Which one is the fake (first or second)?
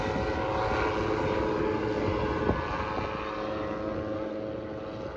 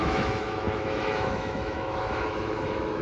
second